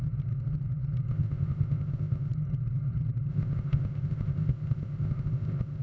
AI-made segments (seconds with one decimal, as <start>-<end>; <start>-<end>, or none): 1.1-2.3; 3.3-5.8